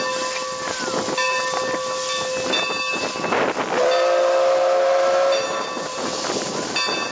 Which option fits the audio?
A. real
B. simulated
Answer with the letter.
A